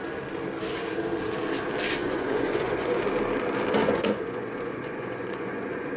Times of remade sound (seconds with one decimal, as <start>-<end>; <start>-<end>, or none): 2.0-3.0; 3.8-6.0